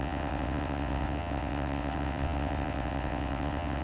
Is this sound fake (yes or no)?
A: yes